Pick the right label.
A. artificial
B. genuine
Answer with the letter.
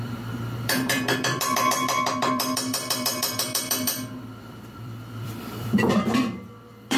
A